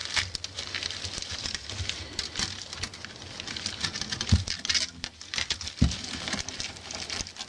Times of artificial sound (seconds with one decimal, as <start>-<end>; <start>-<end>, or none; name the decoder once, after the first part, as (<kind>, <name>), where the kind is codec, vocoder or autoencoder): none